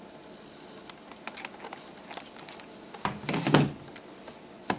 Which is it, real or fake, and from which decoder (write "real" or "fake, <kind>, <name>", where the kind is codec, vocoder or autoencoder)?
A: real